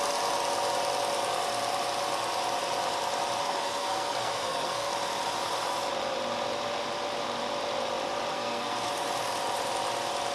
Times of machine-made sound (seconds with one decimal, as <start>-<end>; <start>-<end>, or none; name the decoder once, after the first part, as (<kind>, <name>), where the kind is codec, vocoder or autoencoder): 3.4-4.9 (codec, SNAC); 8.3-8.9